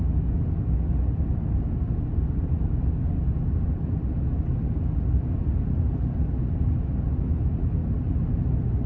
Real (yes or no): yes